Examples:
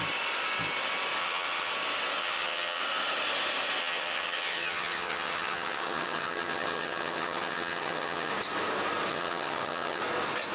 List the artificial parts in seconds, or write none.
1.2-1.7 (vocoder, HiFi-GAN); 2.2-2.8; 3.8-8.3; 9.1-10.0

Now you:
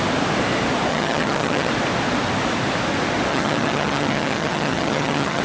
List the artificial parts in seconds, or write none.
0.9-1.7 (vocoder, HiFi-GAN); 3.3-5.4

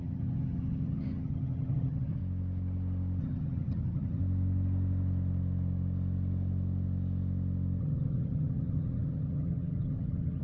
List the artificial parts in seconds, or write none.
0.0-2.2 (vocoder, HiFi-GAN); 3.2-4.2; 7.8-10.4

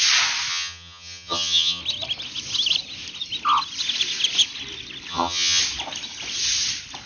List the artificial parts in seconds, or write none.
0.5-1.8 (vocoder, HiFi-GAN); 5.1-5.6

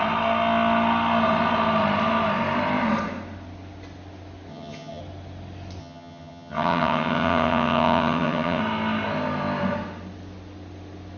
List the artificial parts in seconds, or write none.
4.5-5.0 (vocoder, HiFi-GAN); 5.8-8.6